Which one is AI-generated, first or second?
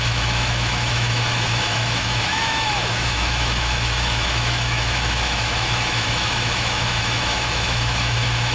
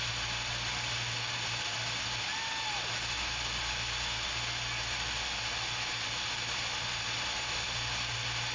first